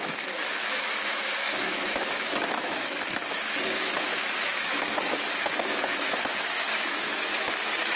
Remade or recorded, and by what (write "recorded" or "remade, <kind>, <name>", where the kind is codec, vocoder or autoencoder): remade, autoencoder, DAC-VAE